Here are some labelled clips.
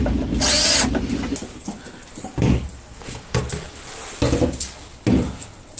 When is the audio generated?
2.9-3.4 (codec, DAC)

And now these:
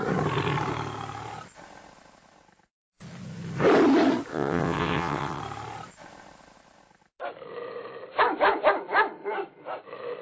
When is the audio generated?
4.3-5.4 (vocoder, WaveNeXt)

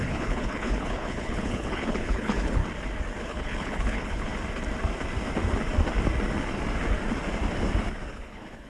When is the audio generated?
0.0-2.6 (codec, HILCodec); 3.2-4.3; 8.1-8.7

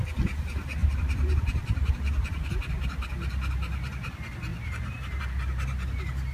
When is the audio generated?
0.8-2.5 (vocoder, BigVGAN v2)

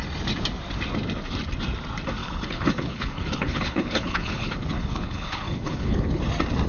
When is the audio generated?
2.2-6.2 (codec, HILCodec)